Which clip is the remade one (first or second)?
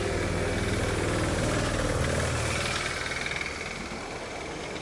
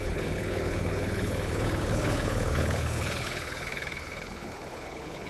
second